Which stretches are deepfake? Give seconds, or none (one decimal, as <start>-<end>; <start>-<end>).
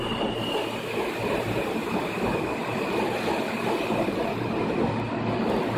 1.2-1.9; 2.6-4.5